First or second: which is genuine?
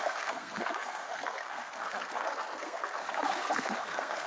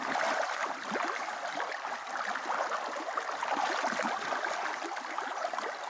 second